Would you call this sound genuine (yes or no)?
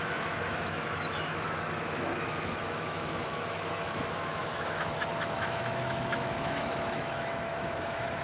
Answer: no